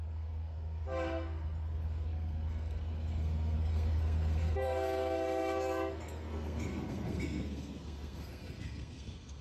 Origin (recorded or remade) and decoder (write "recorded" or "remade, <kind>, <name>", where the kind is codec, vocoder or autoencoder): remade, codec, SNAC